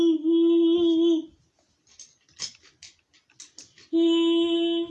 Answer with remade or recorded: recorded